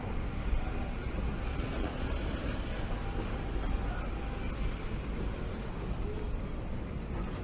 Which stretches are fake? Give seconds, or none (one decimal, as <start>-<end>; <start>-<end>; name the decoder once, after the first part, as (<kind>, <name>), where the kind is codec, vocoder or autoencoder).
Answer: 1.5-2.2 (vocoder, Vocos)

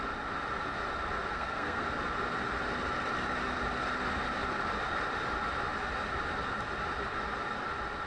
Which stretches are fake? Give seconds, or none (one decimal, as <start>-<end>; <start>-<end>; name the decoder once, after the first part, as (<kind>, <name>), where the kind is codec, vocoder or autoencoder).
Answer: 1.3-1.8 (codec, SNAC)

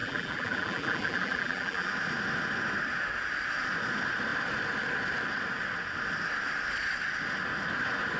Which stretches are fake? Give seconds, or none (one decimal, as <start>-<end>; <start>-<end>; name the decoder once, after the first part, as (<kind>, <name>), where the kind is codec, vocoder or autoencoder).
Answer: 0.0-1.9 (vocoder, BigVGAN v2)

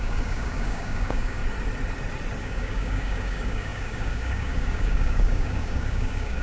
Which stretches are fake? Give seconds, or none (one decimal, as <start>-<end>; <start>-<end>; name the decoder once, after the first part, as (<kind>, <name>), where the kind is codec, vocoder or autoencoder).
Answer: 0.0-1.4 (codec, DAC); 2.4-6.4

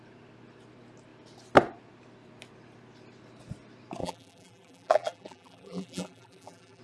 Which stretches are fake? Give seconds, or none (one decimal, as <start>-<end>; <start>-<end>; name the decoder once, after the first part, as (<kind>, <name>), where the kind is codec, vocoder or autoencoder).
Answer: 4.0-6.8 (vocoder, BigVGAN v2)

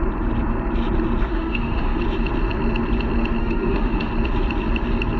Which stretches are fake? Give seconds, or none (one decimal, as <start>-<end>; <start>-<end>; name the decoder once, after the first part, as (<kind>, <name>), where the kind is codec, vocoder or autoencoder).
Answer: 1.3-2.0 (autoencoder, DAC-VAE); 3.4-4.1

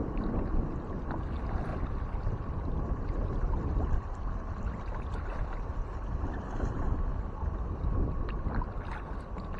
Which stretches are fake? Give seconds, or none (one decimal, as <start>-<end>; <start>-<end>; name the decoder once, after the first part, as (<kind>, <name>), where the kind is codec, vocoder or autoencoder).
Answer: 1.7-6.2 (vocoder, BigVGAN v2)

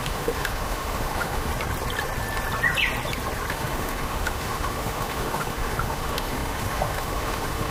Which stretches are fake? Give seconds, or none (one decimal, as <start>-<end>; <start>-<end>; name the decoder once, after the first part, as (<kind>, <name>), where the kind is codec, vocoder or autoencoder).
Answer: 0.0-1.5 (autoencoder, DAC-VAE); 3.5-7.7